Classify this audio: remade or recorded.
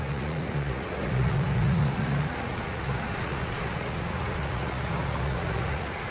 remade